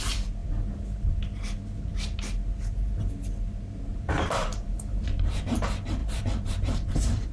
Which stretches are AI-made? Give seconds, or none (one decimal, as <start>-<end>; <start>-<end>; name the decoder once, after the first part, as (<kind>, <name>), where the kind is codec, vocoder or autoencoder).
3.9-5.6 (vocoder, BigVGAN v2); 6.0-7.3